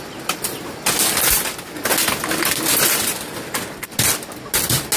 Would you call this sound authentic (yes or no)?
yes